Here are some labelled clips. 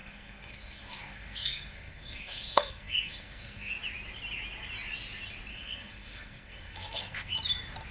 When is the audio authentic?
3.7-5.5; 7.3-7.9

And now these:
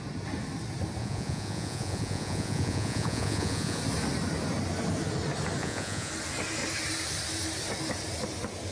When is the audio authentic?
0.0-1.0; 3.8-5.6; 6.1-8.7

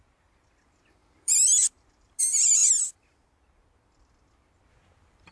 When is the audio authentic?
2.6-4.7